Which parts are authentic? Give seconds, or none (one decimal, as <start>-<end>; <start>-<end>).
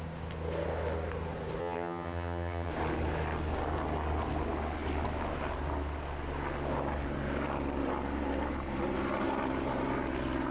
0.0-1.6; 2.7-10.5